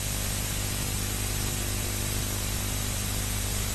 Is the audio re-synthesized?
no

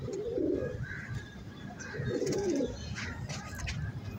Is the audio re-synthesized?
yes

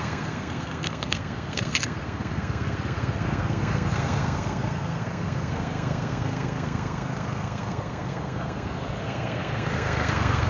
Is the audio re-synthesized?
yes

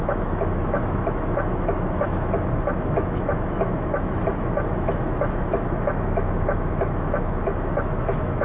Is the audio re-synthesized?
yes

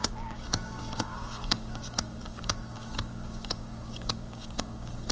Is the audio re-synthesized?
yes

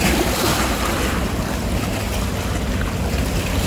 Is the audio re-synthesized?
no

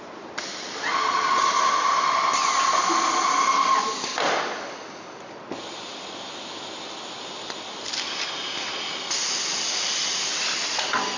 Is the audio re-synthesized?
no